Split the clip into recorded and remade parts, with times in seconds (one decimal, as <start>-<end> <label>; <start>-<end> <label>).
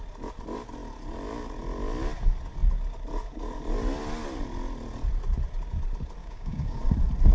0.0-6.2 recorded; 6.2-6.8 remade; 6.8-7.3 recorded